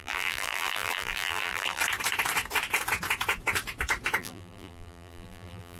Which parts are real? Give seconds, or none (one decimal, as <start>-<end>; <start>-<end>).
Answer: 1.8-4.2